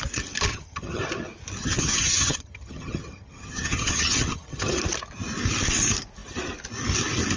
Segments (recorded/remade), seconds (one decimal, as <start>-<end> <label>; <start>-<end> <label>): 0.0-0.5 recorded; 0.5-1.0 remade; 1.0-1.6 recorded; 1.6-4.8 remade; 4.8-7.4 recorded